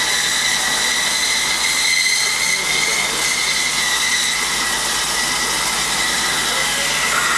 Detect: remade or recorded recorded